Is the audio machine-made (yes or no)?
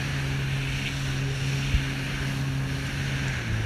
no